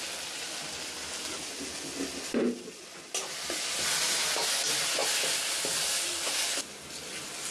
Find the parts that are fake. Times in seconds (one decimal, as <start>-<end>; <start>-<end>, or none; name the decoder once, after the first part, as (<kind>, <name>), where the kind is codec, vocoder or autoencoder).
none